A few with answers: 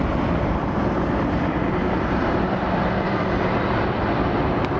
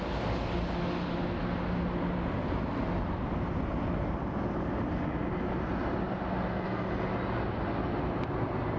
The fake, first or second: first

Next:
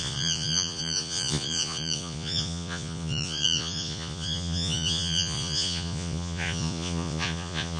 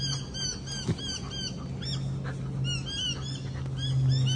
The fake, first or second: first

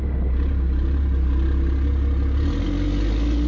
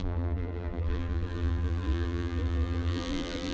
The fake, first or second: second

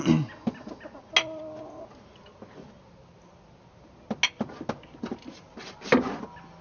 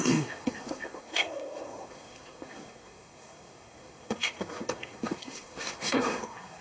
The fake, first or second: second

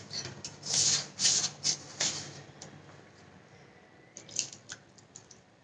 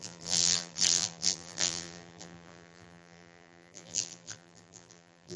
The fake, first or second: second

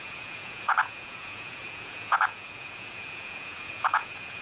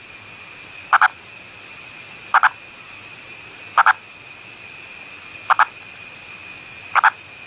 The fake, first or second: first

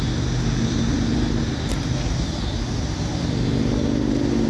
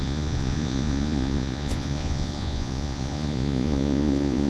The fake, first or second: second